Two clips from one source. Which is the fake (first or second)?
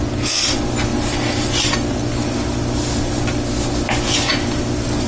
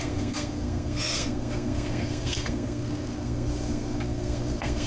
second